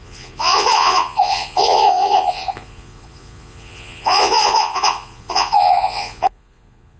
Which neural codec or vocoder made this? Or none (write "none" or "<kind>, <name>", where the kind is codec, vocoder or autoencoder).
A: vocoder, Vocos